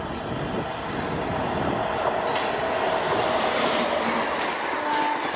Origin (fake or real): real